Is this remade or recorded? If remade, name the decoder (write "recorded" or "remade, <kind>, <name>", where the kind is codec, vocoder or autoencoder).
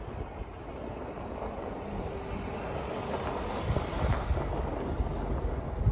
recorded